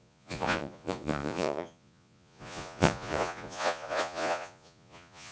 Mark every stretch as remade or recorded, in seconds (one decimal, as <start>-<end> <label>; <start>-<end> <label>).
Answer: 0.0-5.3 remade